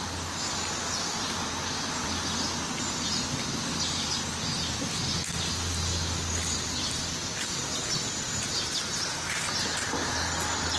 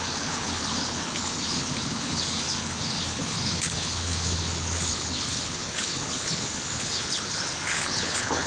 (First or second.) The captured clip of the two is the first